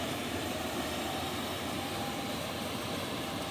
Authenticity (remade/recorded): remade